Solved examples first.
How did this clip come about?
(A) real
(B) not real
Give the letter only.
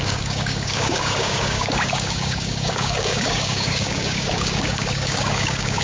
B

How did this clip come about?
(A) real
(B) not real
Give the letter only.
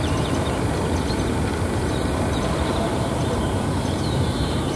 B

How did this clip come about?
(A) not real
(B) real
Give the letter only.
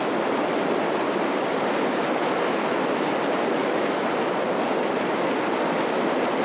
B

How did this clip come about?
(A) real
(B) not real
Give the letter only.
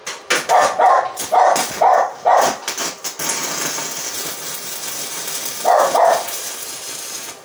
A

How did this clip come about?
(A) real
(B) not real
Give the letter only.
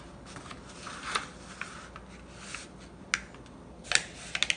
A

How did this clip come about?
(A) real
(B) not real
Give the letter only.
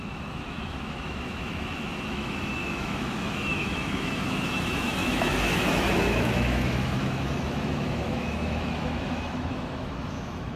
B